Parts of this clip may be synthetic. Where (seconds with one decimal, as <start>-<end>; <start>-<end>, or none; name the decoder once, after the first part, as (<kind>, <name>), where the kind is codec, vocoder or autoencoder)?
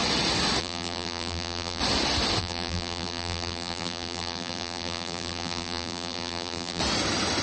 0.6-1.8 (vocoder, BigVGAN v2); 2.4-6.8